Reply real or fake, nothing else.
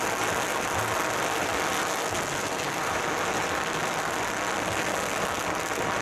real